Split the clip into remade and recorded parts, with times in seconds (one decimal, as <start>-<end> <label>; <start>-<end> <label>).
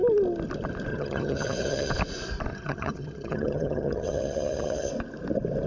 0.0-0.9 recorded; 0.9-1.9 remade; 1.9-2.5 recorded; 2.5-4.9 remade; 4.9-5.7 recorded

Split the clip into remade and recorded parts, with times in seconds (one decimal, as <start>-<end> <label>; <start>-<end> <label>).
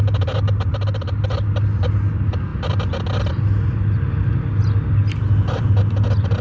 0.0-6.4 recorded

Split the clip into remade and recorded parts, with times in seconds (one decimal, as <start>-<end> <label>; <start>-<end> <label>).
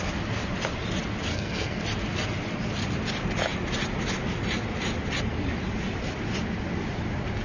0.0-1.3 recorded; 1.3-1.8 remade; 1.8-7.4 recorded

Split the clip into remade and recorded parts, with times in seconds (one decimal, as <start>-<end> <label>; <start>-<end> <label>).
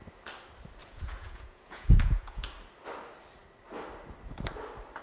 0.0-0.8 recorded; 0.8-2.5 remade; 2.5-5.0 recorded